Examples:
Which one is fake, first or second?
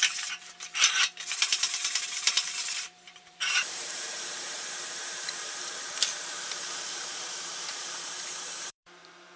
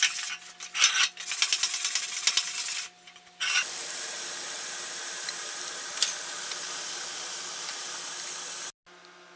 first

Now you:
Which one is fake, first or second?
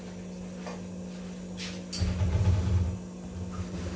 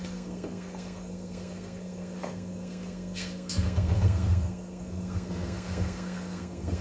second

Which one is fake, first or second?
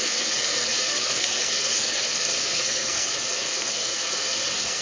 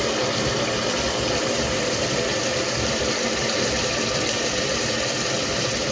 first